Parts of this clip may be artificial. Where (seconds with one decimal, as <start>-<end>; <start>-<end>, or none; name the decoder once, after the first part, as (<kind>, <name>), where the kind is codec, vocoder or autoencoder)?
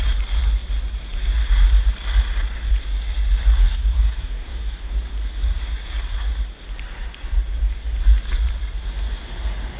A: 3.6-4.9 (codec, DAC)